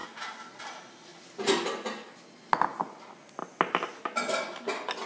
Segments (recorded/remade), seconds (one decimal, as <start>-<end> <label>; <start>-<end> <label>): 0.0-5.1 recorded